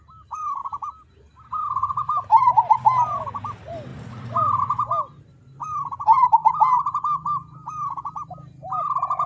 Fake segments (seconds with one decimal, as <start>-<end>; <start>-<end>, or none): none